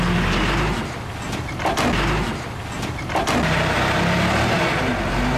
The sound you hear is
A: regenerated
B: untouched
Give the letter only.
B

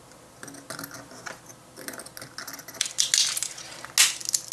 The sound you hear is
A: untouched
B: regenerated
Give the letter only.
A